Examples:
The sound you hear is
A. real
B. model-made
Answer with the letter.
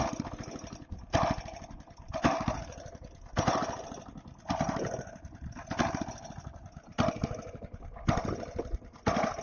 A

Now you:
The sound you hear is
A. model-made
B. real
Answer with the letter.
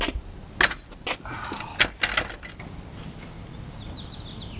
B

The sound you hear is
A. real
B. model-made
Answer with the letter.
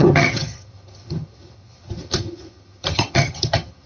B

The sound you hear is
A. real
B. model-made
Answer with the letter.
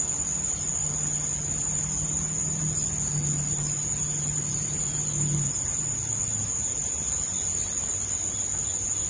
A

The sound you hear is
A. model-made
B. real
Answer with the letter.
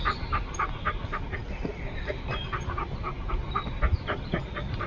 B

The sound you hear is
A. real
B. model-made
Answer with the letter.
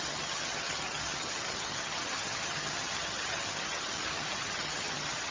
B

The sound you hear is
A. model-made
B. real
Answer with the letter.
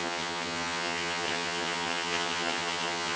A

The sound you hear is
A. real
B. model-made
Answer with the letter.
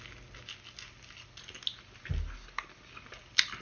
A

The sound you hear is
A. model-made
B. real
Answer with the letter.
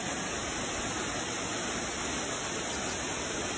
B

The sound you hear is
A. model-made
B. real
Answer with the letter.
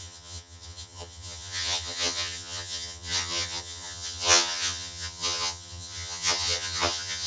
A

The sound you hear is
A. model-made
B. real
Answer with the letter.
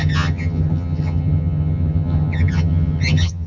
A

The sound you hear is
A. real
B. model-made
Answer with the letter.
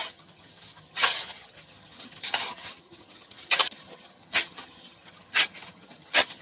B